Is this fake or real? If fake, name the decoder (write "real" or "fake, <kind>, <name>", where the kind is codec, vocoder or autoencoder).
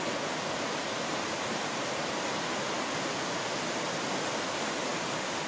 real